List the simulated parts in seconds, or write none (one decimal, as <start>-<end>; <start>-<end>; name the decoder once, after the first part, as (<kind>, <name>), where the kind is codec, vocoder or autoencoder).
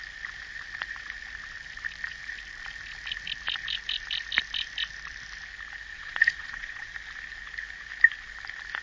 5.9-6.9 (vocoder, Vocos)